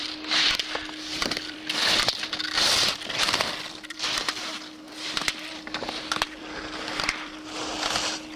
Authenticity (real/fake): fake